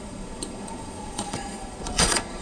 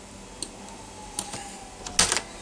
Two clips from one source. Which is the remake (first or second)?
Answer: first